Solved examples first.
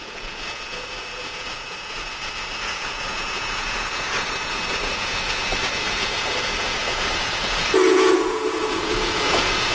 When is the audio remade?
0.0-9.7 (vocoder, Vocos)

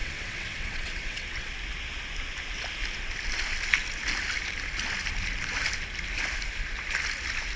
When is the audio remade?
0.0-1.5 (vocoder, WaveNeXt)